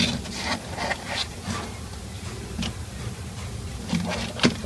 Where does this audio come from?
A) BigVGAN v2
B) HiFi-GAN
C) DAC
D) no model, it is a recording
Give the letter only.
A